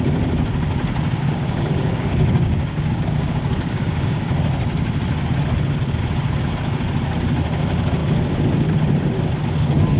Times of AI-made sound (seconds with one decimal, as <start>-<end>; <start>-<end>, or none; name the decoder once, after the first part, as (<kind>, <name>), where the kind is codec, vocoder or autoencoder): 1.2-4.3 (codec, DAC)